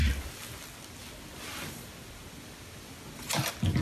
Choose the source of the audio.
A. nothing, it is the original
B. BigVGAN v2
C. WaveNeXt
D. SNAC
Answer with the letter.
A